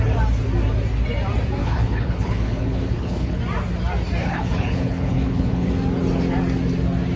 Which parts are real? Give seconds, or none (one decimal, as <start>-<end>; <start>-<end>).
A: 0.0-1.6; 3.4-4.2; 5.7-7.2